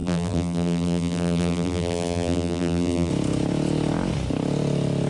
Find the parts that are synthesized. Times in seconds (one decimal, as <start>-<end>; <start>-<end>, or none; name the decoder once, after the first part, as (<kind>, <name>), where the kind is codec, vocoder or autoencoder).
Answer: 0.0-3.1 (vocoder, BigVGAN v2)